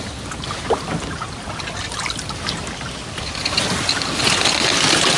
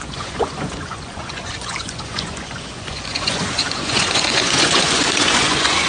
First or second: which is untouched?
first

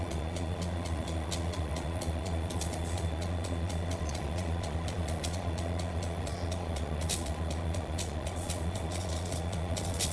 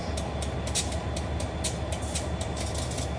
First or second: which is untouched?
second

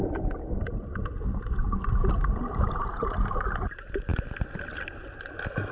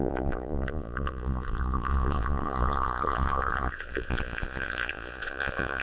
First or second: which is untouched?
first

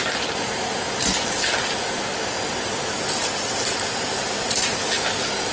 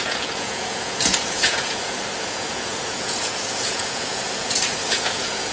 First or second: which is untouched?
first